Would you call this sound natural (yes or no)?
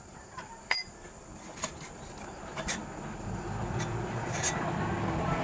yes